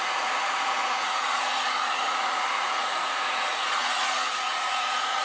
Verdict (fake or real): fake